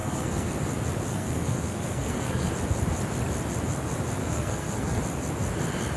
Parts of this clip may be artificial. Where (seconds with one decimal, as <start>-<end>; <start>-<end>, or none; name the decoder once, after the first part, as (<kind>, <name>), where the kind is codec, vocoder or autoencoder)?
0.0-0.5 (codec, SNAC); 1.1-2.5; 4.2-5.0